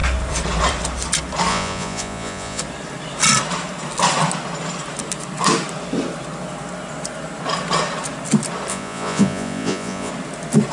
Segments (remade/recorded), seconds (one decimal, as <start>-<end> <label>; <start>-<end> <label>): 0.0-1.5 recorded; 1.5-2.6 remade; 2.6-8.7 recorded; 8.7-10.1 remade; 10.1-10.7 recorded

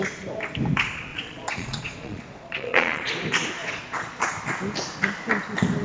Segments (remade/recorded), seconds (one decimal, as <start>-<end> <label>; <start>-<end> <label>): 0.0-1.1 recorded; 1.1-3.1 remade; 3.1-3.6 recorded; 3.6-4.3 remade; 4.3-5.8 recorded

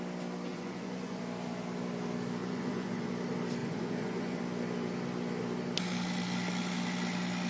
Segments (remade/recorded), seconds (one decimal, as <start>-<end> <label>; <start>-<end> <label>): 0.0-0.5 recorded; 0.5-1.2 remade; 1.2-2.4 recorded; 2.4-3.1 remade; 3.1-3.6 recorded; 3.6-4.4 remade; 4.4-7.5 recorded

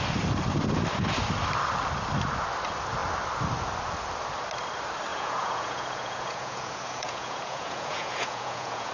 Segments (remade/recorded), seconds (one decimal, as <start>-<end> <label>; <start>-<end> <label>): 0.0-5.1 recorded; 5.1-8.9 remade

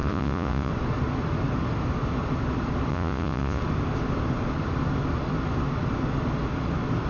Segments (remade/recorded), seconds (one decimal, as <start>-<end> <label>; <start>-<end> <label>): 0.0-0.7 remade; 0.7-2.9 recorded; 2.9-3.6 remade; 3.6-7.1 recorded

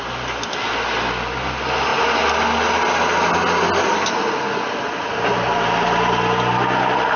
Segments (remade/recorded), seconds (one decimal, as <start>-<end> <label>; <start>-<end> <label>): 0.0-7.2 recorded

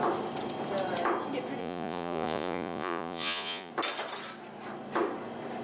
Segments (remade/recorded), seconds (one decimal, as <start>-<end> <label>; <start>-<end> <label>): 0.0-1.6 recorded; 1.6-3.7 remade; 3.7-5.6 recorded